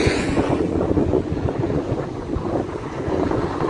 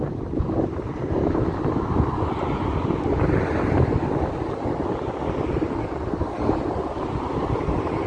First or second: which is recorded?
second